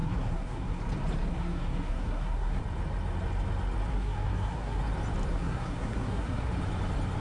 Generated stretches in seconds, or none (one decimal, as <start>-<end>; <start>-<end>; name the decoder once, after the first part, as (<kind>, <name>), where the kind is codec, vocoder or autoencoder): 0.0-0.8 (codec, SNAC); 1.3-2.6; 3.9-4.8; 5.3-6.5